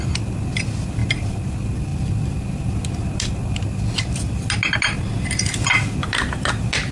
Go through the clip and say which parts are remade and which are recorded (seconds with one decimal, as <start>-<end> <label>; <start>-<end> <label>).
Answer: 0.0-6.9 recorded